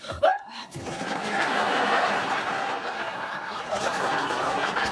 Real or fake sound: fake